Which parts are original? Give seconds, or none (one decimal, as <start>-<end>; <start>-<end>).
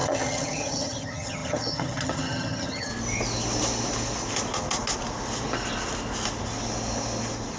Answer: 2.9-7.6